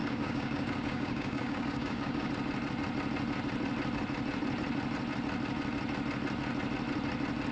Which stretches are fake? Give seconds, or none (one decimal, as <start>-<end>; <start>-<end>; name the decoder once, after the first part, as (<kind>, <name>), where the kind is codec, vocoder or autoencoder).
0.0-2.3 (codec, DAC)